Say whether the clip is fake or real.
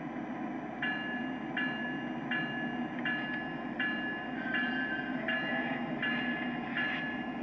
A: real